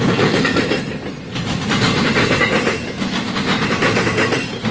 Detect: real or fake real